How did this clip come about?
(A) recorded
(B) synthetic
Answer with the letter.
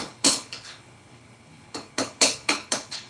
B